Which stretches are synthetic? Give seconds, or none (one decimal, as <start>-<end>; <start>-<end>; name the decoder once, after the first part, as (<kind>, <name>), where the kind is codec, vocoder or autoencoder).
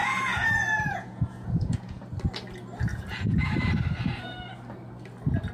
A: 0.0-2.0 (vocoder, Vocos); 2.9-3.5